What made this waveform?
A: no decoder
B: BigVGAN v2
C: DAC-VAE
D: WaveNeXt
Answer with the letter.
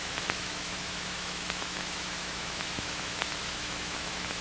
C